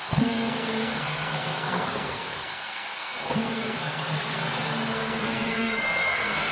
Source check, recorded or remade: remade